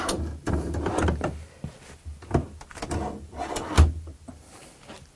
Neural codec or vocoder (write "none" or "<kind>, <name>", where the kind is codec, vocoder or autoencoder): none